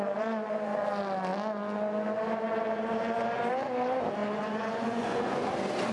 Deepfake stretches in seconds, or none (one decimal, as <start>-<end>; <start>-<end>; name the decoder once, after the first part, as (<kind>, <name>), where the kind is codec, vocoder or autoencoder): 4.2-5.5 (vocoder, Vocos)